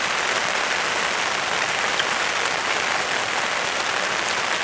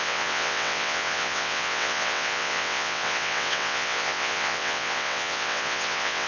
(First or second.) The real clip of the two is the first